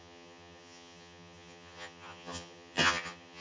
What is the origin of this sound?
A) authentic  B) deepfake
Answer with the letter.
B